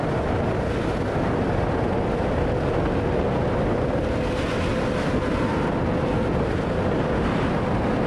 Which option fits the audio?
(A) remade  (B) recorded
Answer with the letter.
B